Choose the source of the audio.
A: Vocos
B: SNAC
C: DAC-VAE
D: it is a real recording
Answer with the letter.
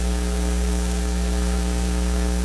B